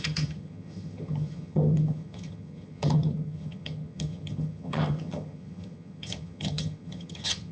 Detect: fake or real fake